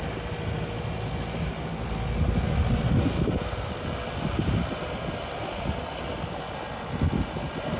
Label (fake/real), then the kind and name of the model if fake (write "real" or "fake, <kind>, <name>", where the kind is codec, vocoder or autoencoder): real